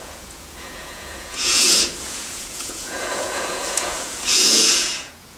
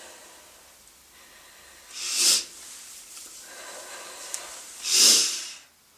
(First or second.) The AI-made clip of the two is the first